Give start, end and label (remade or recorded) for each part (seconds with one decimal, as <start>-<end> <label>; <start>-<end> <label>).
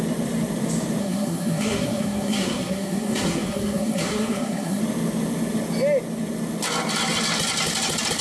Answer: 0.0-1.0 recorded; 1.0-4.8 remade; 4.8-8.2 recorded